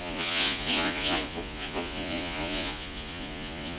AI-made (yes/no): yes